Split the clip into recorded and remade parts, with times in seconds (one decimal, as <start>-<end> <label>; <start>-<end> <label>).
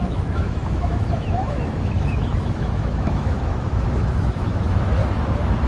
0.0-5.0 remade; 5.0-5.7 recorded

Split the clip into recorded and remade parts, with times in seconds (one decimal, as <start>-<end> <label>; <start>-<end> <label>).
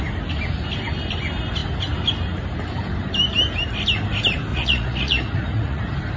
0.0-4.5 recorded; 4.5-5.8 remade; 5.8-6.2 recorded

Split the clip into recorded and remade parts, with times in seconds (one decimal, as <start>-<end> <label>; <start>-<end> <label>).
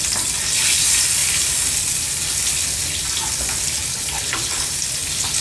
0.0-3.9 recorded; 3.9-4.7 remade; 4.7-5.4 recorded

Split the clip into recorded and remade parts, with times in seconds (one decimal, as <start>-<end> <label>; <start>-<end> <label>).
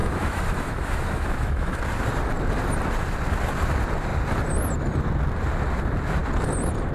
0.0-1.8 remade; 1.8-6.9 recorded